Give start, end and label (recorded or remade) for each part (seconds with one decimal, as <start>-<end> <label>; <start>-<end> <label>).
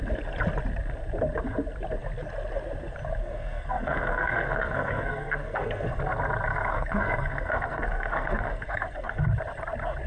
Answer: 0.0-3.2 recorded; 3.2-6.0 remade; 6.0-6.5 recorded; 6.5-9.2 remade; 9.2-10.1 recorded